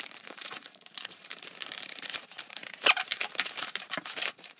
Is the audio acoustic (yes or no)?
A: no